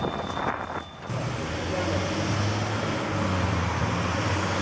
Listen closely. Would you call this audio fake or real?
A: real